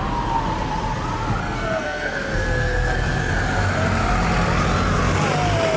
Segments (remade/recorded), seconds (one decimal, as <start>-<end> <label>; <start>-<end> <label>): 0.0-1.4 recorded; 1.4-3.3 remade; 3.3-5.8 recorded